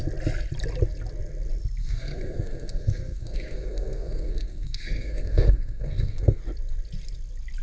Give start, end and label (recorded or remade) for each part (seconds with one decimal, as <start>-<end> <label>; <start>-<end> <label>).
0.0-1.8 recorded; 1.8-6.4 remade; 6.4-7.6 recorded